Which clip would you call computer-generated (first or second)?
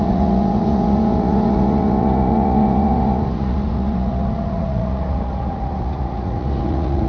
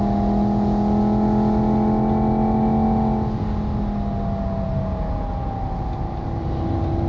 first